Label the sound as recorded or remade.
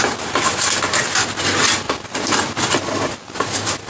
recorded